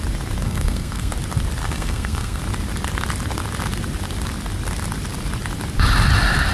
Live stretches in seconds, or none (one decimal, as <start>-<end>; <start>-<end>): 0.0-0.4; 1.1-1.6; 2.4-6.5